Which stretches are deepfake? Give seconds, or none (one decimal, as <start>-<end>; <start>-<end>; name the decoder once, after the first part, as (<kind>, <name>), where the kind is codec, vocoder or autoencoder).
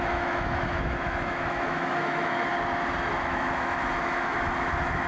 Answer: 0.0-2.5 (autoencoder, DAC-VAE); 3.1-5.1